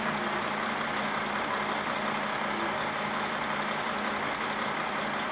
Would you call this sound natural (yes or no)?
yes